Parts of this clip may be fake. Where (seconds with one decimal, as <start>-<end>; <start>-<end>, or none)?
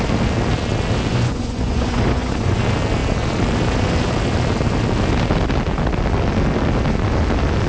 1.1-2.6